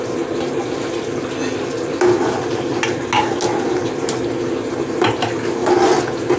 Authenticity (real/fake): real